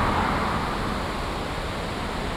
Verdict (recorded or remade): recorded